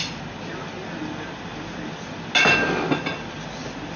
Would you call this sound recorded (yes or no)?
yes